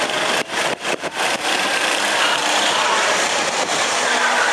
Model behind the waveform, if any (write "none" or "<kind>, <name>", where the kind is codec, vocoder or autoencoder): vocoder, BigVGAN v2